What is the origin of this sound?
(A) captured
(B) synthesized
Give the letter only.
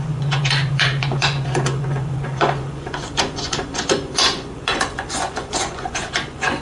B